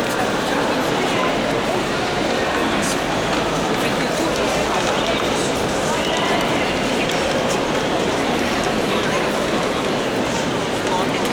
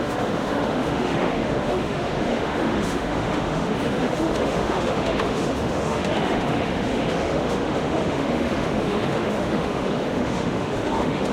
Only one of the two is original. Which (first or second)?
first